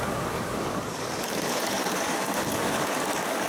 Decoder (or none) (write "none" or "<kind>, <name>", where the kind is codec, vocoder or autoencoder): codec, DAC